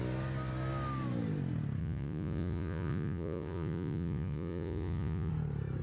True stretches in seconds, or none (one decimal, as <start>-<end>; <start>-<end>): 0.0-1.8; 5.3-5.8